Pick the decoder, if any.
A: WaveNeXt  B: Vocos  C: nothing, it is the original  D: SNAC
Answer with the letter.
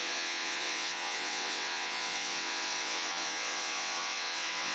A